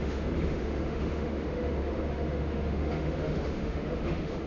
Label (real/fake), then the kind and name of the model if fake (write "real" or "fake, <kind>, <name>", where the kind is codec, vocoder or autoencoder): fake, autoencoder, DAC-VAE